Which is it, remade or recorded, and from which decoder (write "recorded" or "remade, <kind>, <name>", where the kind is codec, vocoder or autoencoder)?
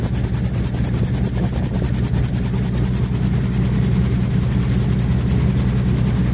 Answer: recorded